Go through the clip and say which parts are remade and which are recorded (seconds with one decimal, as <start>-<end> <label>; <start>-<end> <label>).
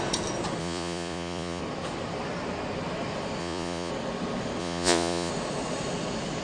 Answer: 0.0-0.6 recorded; 0.6-1.6 remade; 1.6-3.4 recorded; 3.4-3.9 remade; 3.9-4.6 recorded; 4.6-5.3 remade; 5.3-6.4 recorded